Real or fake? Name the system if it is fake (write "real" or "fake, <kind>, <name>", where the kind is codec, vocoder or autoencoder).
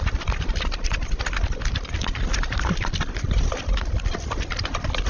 real